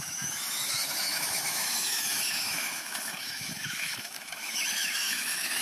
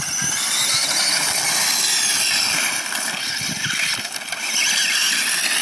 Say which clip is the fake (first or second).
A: first